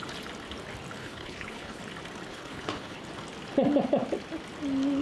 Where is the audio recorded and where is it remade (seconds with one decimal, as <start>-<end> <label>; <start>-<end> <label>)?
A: 0.0-1.0 recorded; 1.0-1.8 remade; 1.8-2.3 recorded; 2.3-3.0 remade; 3.0-5.0 recorded